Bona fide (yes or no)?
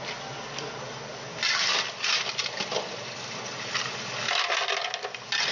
yes